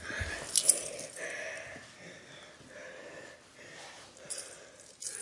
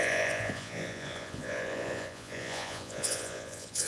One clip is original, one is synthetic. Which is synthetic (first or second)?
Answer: second